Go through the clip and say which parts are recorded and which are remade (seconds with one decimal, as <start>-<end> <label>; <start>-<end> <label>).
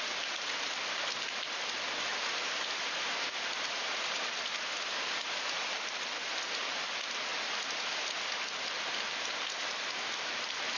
0.0-10.8 recorded